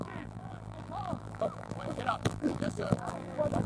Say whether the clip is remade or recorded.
remade